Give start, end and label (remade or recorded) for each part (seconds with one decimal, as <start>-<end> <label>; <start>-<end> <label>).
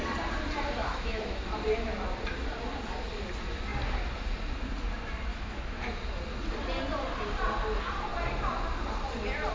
0.0-0.8 recorded; 0.8-1.4 remade; 1.4-5.3 recorded; 5.3-5.8 remade; 5.8-9.5 recorded